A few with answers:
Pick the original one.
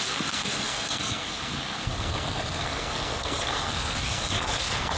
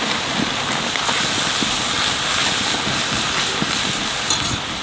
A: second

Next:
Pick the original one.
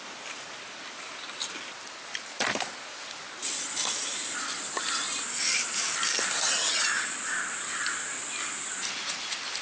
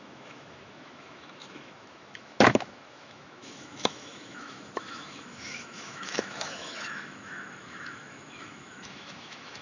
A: first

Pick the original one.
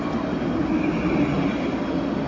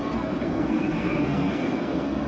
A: first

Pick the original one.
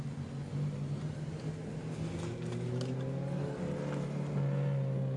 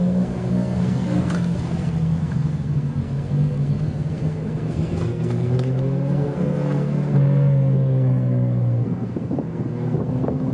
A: first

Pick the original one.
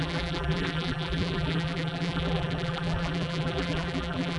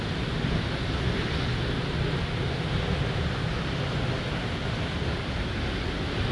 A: second